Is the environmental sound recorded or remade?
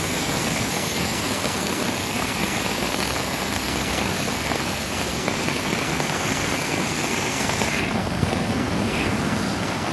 remade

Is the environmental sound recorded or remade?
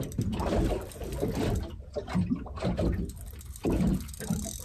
recorded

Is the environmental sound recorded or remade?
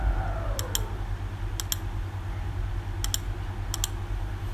recorded